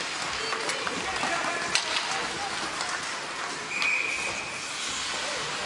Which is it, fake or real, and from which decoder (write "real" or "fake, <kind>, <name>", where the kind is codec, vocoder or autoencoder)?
real